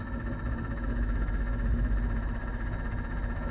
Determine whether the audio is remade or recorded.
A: remade